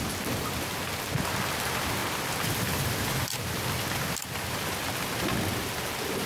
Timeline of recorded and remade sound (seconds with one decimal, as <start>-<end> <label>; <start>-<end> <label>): 0.0-6.3 recorded